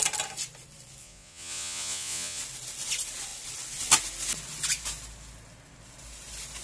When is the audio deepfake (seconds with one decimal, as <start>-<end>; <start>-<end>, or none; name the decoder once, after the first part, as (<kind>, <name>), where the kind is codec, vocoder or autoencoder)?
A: 1.0-2.4 (vocoder, Vocos)